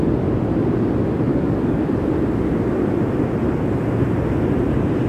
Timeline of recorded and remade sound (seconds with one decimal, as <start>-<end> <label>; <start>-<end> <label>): 0.0-1.3 recorded; 1.3-1.9 remade; 1.9-5.1 recorded